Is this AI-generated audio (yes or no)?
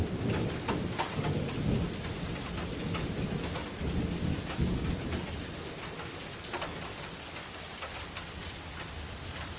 no